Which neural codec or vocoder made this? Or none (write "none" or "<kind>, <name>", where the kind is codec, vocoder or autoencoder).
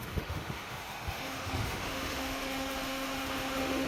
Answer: autoencoder, DAC-VAE